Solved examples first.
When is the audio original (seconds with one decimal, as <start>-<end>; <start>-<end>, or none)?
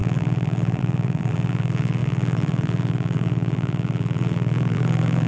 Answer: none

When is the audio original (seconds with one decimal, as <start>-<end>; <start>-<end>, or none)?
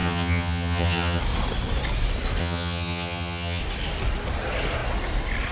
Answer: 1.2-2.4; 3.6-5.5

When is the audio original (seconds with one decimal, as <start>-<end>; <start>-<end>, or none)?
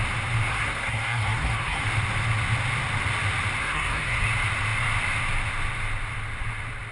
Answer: 0.0-0.5; 1.8-3.6; 4.2-6.9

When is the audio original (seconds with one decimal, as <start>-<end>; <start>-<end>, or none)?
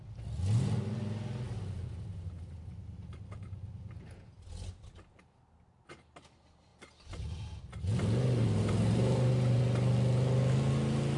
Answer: 0.0-8.4; 9.6-11.2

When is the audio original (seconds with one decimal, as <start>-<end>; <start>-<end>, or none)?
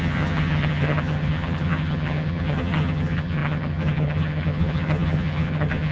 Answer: none